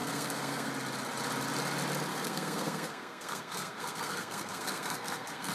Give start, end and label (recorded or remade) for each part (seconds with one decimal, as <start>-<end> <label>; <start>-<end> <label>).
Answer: 0.0-0.7 remade; 0.7-2.1 recorded; 2.1-5.5 remade

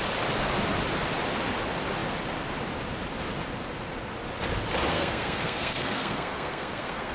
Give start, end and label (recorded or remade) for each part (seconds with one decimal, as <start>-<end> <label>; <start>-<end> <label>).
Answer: 0.0-4.9 recorded; 4.9-7.1 remade

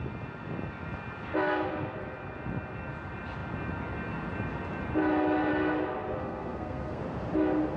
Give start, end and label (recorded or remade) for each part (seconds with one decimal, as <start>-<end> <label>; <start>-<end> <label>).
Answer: 0.0-6.2 recorded; 6.2-7.0 remade; 7.0-7.8 recorded

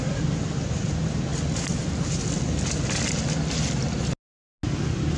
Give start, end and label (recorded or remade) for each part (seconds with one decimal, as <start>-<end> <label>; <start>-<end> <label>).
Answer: 0.0-5.2 recorded